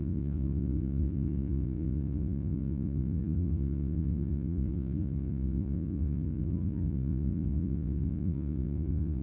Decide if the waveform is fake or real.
fake